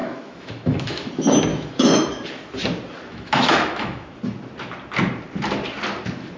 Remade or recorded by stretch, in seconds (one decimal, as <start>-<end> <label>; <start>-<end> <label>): 0.0-1.1 remade; 1.1-1.5 recorded; 1.5-2.1 remade; 2.1-3.1 recorded; 3.1-4.2 remade; 4.2-6.4 recorded